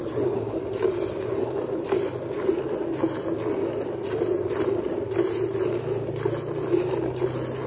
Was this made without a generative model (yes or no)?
yes